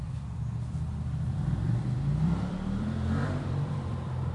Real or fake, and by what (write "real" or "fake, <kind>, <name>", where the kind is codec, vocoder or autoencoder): fake, vocoder, BigVGAN v2